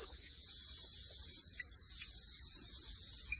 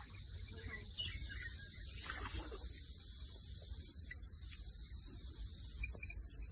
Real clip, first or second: second